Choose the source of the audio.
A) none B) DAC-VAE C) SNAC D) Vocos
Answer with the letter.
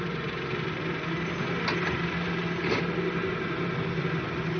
A